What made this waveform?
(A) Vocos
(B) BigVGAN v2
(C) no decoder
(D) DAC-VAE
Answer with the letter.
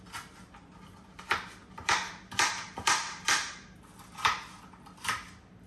C